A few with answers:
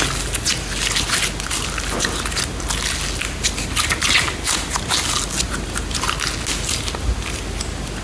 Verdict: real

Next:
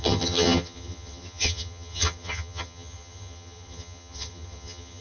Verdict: fake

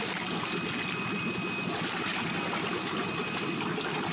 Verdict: real